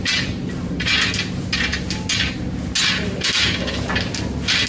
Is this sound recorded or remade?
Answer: recorded